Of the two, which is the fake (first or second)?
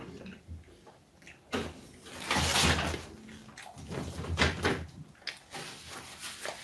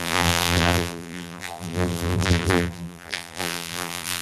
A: second